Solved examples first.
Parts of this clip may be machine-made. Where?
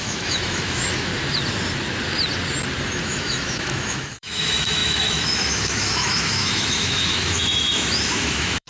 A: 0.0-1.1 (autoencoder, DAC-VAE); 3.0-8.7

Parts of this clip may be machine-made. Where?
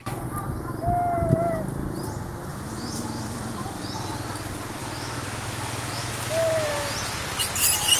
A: 2.5-3.8 (autoencoder, DAC-VAE); 4.8-6.2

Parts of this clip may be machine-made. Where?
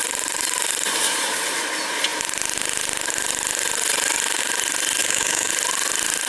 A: 5.0-5.5 (autoencoder, DAC-VAE)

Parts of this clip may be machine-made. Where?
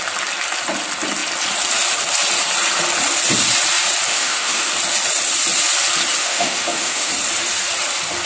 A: 4.1-4.7 (autoencoder, DAC-VAE); 6.2-7.1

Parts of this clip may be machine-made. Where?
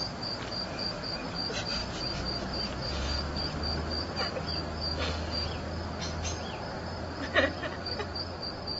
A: none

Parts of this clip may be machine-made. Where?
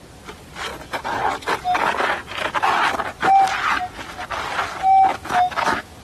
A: 5.1-6.0 (autoencoder, DAC-VAE)